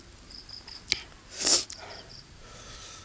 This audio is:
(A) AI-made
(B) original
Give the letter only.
B